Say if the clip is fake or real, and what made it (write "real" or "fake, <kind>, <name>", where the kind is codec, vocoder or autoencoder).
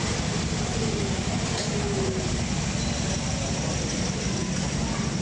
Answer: real